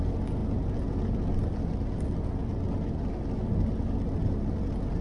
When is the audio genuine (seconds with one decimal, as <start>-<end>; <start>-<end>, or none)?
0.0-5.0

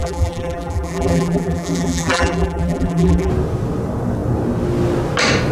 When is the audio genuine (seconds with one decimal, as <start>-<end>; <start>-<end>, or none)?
3.3-5.5

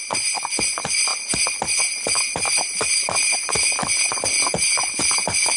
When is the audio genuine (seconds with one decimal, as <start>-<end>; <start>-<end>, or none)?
0.0-5.6

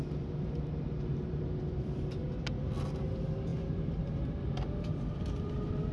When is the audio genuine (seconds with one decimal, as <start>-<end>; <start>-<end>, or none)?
0.0-5.9

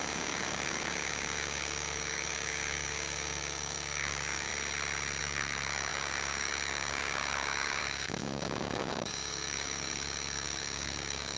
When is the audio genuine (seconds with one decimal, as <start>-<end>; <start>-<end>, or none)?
4.5-5.2